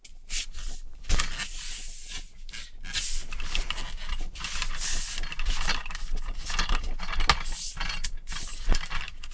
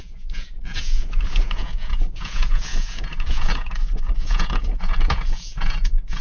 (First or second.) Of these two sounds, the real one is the first